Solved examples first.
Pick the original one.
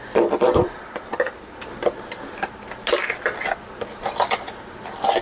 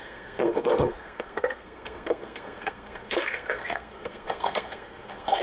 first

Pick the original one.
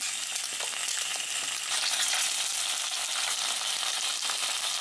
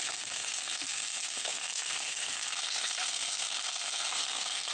first